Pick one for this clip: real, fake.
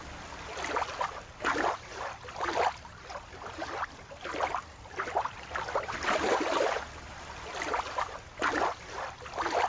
fake